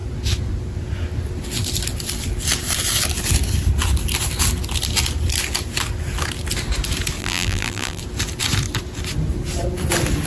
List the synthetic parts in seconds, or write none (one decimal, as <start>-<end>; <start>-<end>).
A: 7.2-8.0